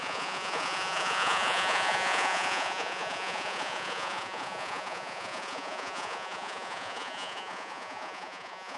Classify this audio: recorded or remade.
remade